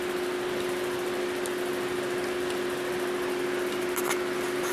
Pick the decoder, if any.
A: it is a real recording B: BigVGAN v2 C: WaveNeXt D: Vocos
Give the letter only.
B